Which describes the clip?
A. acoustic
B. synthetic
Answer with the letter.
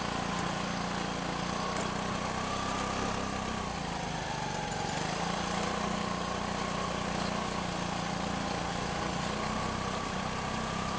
A